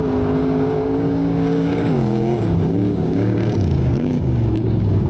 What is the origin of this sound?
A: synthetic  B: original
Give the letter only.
A